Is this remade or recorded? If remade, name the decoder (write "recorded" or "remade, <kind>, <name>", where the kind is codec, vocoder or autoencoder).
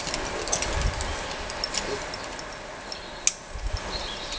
recorded